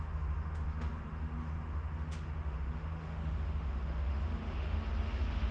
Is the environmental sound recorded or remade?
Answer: remade